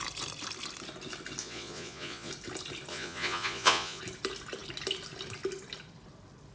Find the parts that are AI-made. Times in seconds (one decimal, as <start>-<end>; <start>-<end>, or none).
1.4-2.3; 2.9-4.0